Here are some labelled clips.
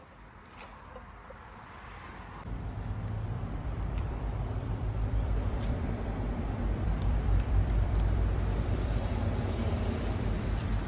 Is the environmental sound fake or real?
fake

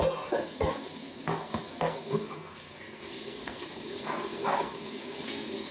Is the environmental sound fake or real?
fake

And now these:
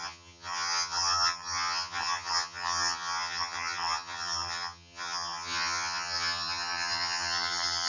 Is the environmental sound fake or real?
fake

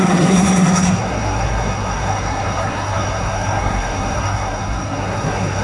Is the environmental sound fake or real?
fake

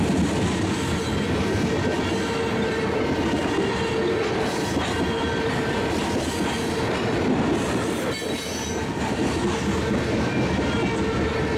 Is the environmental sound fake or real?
real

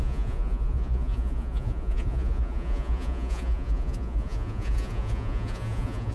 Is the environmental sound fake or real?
fake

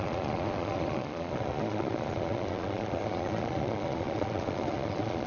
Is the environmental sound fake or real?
fake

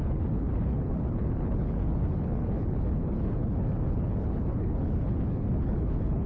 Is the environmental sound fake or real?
fake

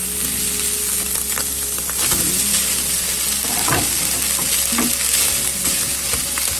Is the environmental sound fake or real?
real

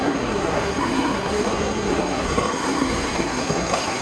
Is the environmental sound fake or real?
fake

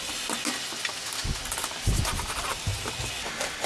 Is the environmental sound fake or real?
real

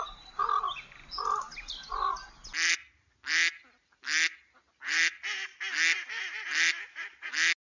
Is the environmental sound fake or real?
real